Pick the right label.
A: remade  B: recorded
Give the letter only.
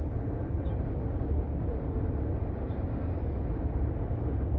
B